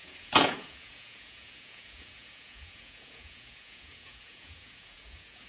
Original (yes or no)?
no